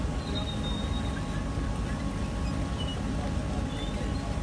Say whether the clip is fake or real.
real